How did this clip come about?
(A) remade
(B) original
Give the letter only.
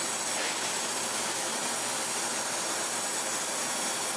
B